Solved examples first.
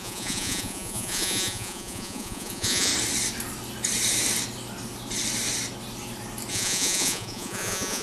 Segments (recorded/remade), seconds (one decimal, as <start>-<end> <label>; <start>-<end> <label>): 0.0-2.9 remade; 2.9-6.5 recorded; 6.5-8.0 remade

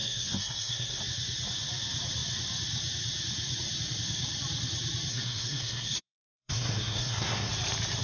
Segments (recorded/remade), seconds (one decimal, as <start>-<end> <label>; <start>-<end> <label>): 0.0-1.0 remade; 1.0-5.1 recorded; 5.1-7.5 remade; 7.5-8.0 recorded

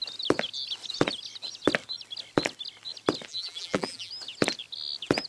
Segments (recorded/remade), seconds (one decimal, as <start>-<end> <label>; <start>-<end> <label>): 0.0-3.3 recorded; 3.3-4.1 remade; 4.1-5.3 recorded